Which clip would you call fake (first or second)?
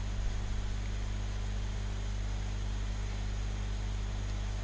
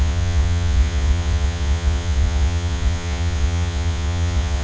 second